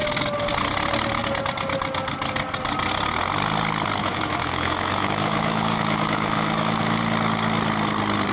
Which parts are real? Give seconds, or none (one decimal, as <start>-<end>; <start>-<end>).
0.0-4.0; 7.0-8.3